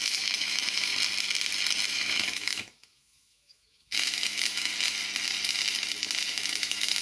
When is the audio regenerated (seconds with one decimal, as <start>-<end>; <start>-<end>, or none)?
0.0-0.9; 1.9-4.7; 6.3-7.0